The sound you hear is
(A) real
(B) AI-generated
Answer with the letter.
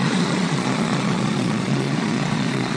B